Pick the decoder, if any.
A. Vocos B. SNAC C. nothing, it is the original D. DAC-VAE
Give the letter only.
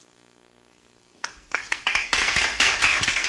B